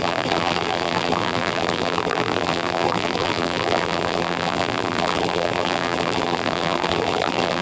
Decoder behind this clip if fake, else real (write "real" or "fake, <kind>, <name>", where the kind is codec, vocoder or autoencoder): fake, vocoder, BigVGAN v2